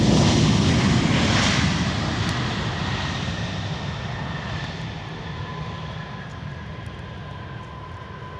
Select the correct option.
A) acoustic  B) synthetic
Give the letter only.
A